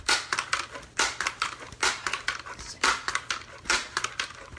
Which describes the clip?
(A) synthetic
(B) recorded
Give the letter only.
B